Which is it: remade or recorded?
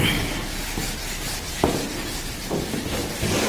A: recorded